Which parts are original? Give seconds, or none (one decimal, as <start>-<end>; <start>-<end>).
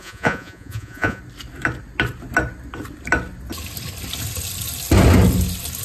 1.2-5.8